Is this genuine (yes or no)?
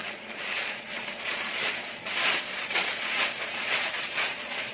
no